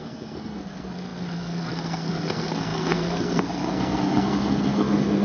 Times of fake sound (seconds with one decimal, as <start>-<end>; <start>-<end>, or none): 0.0-5.2